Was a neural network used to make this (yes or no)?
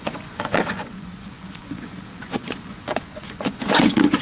yes